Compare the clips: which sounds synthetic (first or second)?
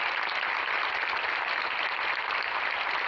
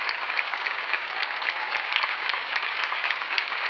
second